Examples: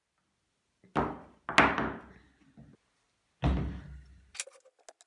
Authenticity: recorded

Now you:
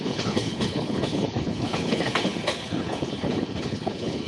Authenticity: remade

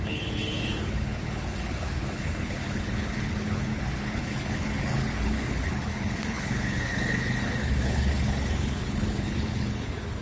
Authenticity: remade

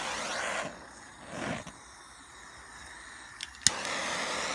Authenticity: recorded